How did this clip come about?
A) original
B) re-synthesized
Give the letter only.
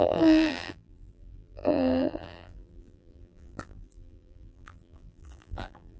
B